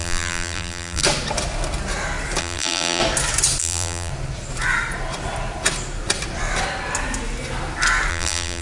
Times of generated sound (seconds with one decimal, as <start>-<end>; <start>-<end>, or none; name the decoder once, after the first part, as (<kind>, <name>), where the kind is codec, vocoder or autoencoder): 0.0-1.0 (vocoder, BigVGAN v2); 2.4-3.0; 3.6-4.1; 8.1-8.6